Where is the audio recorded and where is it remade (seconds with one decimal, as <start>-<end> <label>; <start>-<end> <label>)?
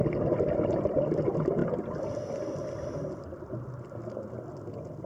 0.0-5.1 recorded